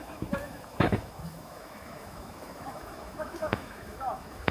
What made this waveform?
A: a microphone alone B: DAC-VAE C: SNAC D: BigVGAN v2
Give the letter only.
B